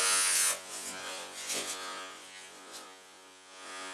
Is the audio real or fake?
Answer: fake